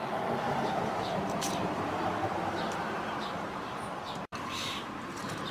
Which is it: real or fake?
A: fake